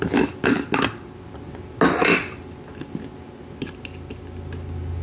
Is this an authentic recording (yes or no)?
yes